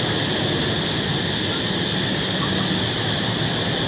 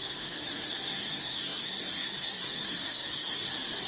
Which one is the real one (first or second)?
first